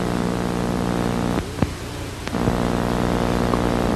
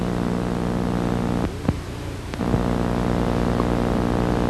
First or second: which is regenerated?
first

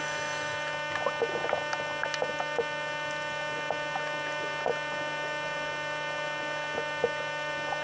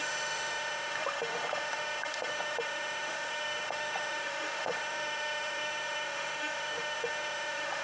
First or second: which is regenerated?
second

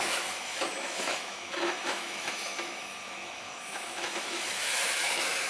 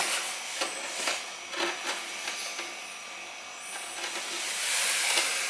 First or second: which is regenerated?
first